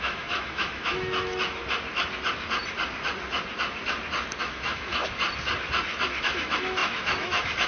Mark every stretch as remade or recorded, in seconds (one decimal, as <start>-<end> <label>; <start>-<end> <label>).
0.0-1.6 remade; 1.6-4.4 recorded; 4.4-5.0 remade; 5.0-6.2 recorded; 6.2-7.7 remade